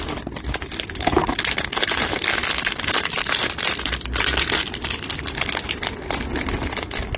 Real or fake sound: real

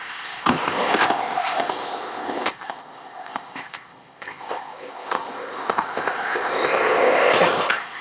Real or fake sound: fake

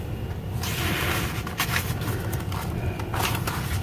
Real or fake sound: real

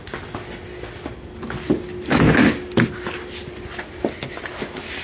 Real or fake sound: real